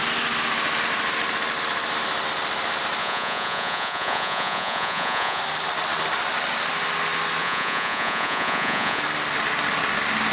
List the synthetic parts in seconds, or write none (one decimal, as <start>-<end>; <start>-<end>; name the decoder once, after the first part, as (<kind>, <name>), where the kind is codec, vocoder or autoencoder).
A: 3.0-5.4 (vocoder, Vocos); 7.4-9.0